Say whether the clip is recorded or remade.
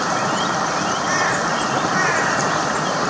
recorded